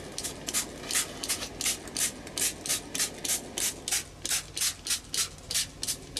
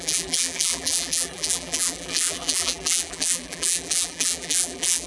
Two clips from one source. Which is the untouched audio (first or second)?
first